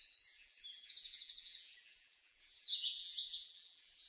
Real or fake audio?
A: fake